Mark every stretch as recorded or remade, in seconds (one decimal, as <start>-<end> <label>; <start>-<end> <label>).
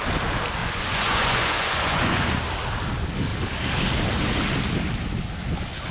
0.0-0.6 recorded; 0.6-2.4 remade; 2.4-5.9 recorded